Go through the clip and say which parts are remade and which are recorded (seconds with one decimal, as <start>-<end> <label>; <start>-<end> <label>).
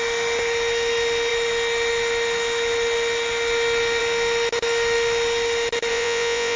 0.0-5.9 recorded; 5.9-6.6 remade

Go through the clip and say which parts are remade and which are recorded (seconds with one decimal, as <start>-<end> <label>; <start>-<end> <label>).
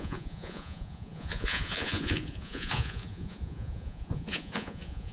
0.0-5.1 remade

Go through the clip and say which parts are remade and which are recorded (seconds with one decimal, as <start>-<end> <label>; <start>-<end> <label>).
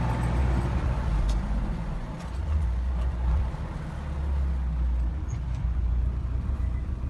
0.0-0.4 recorded; 0.4-3.5 remade; 3.5-5.1 recorded; 5.1-7.1 remade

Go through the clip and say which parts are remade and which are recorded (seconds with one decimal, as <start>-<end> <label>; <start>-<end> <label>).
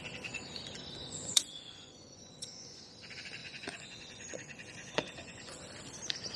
0.0-1.0 recorded; 1.0-2.9 remade; 2.9-3.4 recorded; 3.4-5.6 remade; 5.6-6.4 recorded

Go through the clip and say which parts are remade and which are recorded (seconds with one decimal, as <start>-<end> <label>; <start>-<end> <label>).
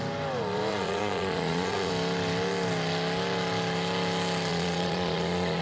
0.0-0.7 recorded; 0.7-1.9 remade; 1.9-4.5 recorded; 4.5-5.6 remade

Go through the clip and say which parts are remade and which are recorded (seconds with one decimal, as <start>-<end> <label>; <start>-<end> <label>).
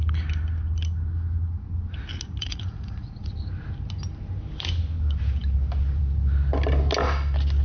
0.0-2.4 recorded; 2.4-3.3 remade; 3.3-7.6 recorded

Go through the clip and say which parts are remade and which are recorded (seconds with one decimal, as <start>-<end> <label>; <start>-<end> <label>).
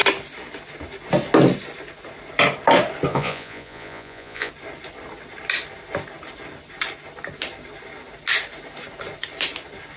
0.0-3.1 recorded; 3.1-4.5 remade; 4.5-10.0 recorded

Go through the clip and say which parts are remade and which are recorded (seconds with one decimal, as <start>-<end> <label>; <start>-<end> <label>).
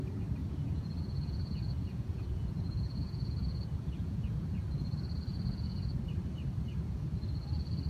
0.0-0.4 recorded; 0.4-4.7 remade; 4.7-5.3 recorded; 5.3-5.9 remade; 5.9-6.7 recorded; 6.7-7.2 remade; 7.2-7.9 recorded